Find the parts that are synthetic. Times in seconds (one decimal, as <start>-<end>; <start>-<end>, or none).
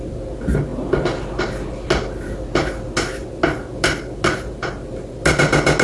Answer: none